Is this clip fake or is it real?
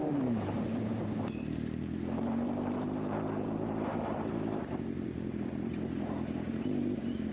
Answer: fake